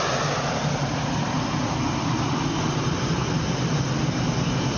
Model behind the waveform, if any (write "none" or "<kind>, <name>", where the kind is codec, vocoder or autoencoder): none